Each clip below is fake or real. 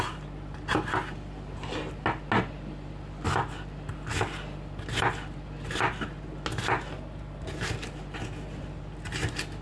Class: real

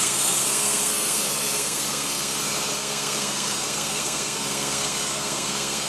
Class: fake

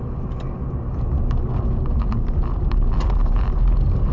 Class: real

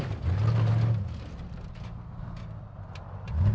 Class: real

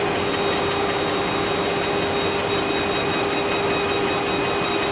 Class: real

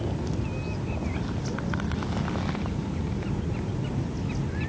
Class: real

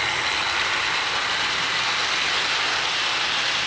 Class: real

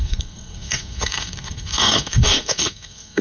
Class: fake